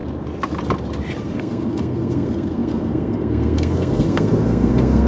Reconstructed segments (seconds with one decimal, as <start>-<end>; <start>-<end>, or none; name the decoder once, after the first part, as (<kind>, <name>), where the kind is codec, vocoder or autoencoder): 1.2-5.1 (codec, SNAC)